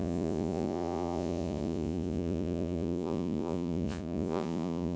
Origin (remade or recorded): remade